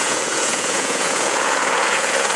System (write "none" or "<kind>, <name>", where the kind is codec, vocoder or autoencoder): vocoder, Vocos